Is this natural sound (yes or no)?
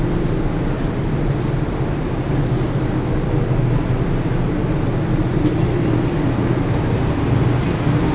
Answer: yes